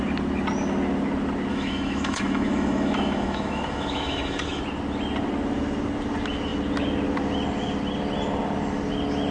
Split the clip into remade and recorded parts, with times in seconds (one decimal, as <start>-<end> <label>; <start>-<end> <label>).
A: 0.0-1.5 recorded; 1.5-4.6 remade; 4.6-9.3 recorded

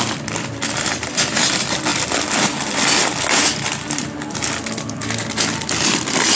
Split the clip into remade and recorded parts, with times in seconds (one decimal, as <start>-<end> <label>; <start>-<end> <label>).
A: 0.0-6.4 recorded